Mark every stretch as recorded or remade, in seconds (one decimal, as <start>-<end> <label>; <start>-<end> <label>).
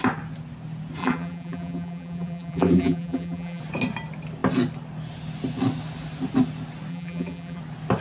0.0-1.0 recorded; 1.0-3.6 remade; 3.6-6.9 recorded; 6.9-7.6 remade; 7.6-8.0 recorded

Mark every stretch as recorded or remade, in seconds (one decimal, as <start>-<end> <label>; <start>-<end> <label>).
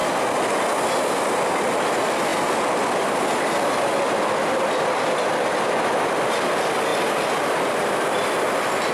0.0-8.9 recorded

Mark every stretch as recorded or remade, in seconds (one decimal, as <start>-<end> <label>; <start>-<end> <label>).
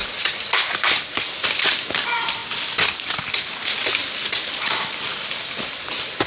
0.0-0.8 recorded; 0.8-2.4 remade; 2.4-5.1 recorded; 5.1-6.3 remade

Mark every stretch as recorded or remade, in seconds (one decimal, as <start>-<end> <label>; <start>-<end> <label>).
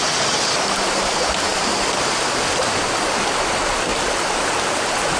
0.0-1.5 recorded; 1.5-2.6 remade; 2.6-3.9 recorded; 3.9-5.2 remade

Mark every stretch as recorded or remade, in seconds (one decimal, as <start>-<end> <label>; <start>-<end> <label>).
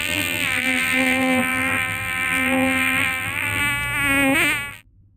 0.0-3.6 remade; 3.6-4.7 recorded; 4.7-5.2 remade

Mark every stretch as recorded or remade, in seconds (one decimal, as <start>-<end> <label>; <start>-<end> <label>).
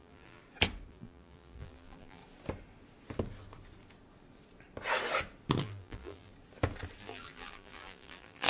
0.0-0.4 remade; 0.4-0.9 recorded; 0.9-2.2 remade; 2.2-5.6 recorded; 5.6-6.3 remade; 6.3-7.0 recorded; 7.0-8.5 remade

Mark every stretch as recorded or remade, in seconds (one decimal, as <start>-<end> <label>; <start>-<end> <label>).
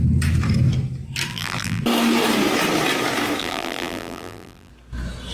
0.0-1.3 recorded; 1.3-1.8 remade; 1.8-3.4 recorded; 3.4-4.7 remade; 4.7-5.3 recorded